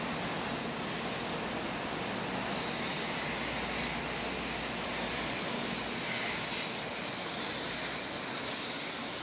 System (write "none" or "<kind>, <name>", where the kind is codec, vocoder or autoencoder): none